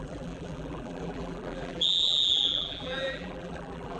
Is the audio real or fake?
fake